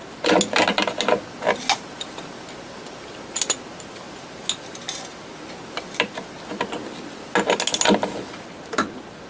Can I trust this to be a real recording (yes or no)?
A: yes